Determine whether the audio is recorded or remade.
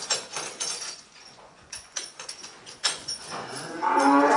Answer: remade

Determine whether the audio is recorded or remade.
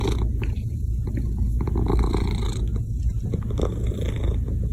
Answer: recorded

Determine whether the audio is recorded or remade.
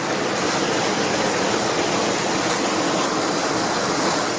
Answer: recorded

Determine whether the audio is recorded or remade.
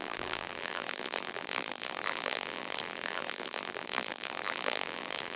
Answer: remade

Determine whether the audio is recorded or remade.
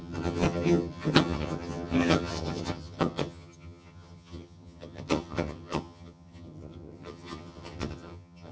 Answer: remade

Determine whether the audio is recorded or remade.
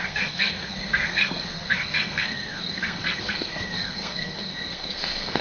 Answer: remade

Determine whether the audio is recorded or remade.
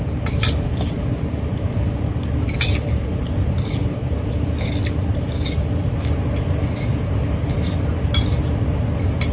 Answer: recorded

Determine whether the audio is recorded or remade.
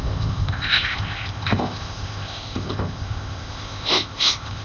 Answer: remade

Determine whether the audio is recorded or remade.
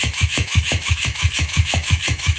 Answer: remade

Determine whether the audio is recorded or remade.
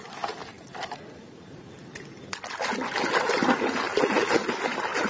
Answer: recorded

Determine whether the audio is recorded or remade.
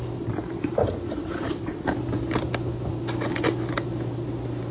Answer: recorded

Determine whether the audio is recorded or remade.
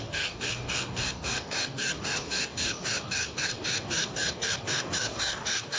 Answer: remade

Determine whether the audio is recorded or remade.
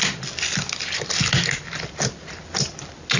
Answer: recorded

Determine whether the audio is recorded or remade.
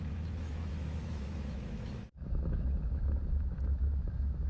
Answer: remade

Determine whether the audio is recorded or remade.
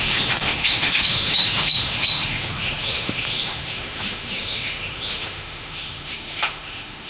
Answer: remade